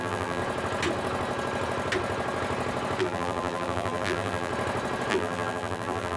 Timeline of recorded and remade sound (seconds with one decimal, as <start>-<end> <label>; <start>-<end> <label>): 0.0-0.4 remade; 0.4-3.0 recorded; 3.0-4.5 remade; 4.5-5.1 recorded; 5.1-6.2 remade